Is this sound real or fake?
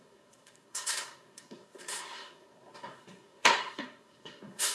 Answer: fake